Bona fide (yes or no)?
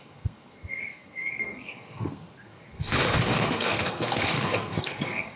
no